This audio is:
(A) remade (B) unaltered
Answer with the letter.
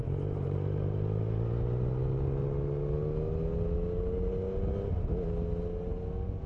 B